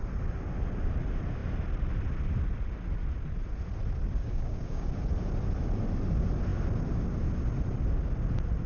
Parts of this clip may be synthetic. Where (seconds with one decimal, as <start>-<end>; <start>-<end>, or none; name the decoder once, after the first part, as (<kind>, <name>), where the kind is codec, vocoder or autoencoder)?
4.2-4.9 (codec, DAC)

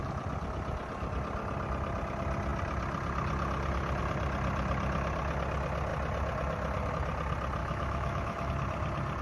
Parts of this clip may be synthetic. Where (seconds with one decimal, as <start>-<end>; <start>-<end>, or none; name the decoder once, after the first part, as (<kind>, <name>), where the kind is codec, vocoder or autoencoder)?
7.6-8.5 (autoencoder, DAC-VAE)

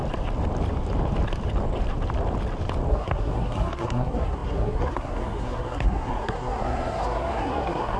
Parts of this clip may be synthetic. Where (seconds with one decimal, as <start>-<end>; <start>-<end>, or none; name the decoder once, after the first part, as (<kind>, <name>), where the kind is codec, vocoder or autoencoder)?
2.9-8.0 (codec, SNAC)

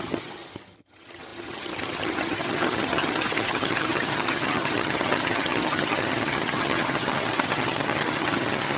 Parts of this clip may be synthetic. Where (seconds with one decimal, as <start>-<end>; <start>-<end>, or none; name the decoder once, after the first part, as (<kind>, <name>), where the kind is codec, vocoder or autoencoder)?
0.0-8.8 (vocoder, HiFi-GAN)

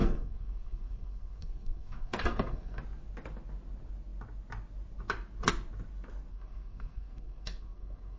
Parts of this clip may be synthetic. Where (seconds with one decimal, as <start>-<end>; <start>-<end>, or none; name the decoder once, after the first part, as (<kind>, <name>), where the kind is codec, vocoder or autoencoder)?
0.0-2.8 (codec, SNAC); 6.3-8.2